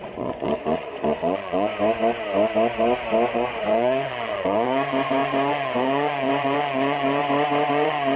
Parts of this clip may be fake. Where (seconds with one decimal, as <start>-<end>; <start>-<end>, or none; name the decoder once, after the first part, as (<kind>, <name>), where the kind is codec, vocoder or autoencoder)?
0.0-1.7 (vocoder, Vocos); 3.3-7.2; 7.7-8.2